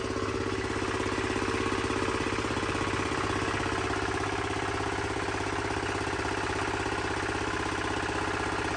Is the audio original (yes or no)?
yes